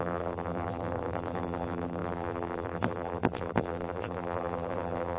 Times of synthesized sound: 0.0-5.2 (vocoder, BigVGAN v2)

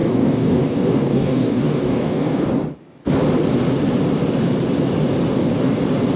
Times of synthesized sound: 0.0-2.5 (codec, DAC); 5.3-5.8

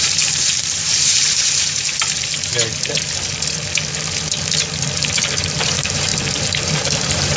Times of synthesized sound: 0.0-2.5 (vocoder, BigVGAN v2); 5.4-6.1; 7.0-7.4

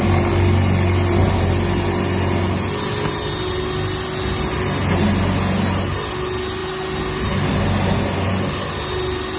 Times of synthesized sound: none

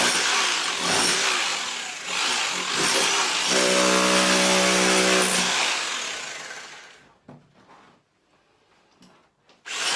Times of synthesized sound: none

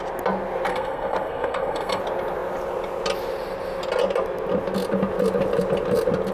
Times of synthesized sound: 0.7-2.0 (codec, SNAC)

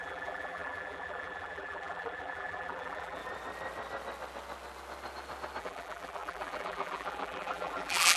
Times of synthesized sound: 0.0-3.2 (vocoder, BigVGAN v2); 5.6-8.2

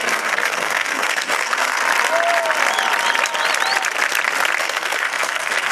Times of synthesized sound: 0.0-1.8 (codec, SNAC); 4.6-5.7